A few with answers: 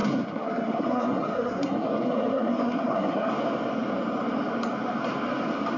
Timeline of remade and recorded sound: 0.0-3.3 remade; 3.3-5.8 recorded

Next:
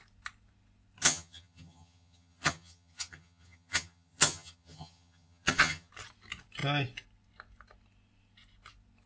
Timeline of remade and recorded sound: 0.0-1.0 recorded; 1.0-5.9 remade; 5.9-9.1 recorded

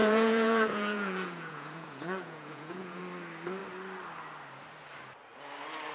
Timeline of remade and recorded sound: 0.0-3.0 remade; 3.0-5.9 recorded

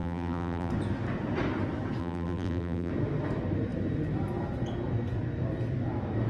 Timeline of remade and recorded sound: 0.0-0.7 remade; 0.7-2.0 recorded; 2.0-2.9 remade; 2.9-6.3 recorded